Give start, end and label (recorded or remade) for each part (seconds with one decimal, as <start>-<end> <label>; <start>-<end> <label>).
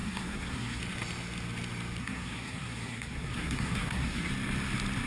0.0-0.8 remade; 0.8-2.0 recorded; 2.0-4.3 remade; 4.3-5.1 recorded